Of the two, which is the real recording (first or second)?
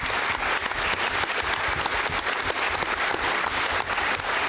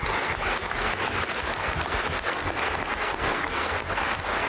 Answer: first